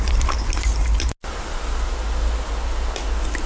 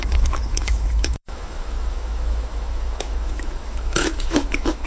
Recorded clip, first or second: first